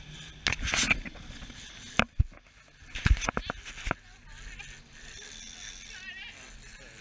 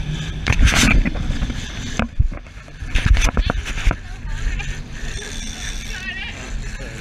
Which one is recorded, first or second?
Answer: first